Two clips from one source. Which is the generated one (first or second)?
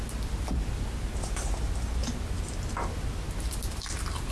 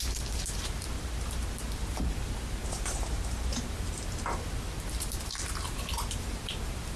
second